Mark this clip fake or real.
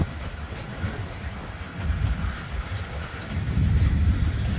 real